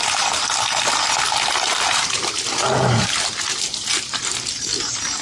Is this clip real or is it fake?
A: real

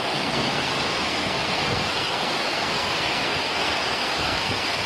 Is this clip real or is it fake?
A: fake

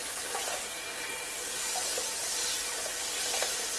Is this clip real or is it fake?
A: real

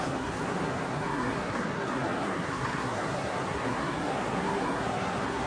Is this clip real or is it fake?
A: fake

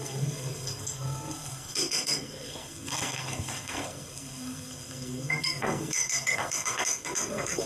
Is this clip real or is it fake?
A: fake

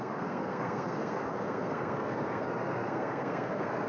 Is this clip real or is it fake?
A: fake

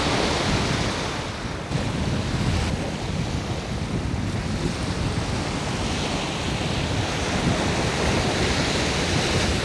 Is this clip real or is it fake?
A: real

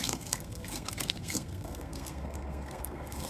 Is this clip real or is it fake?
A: fake